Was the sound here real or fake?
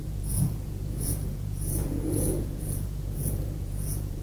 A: fake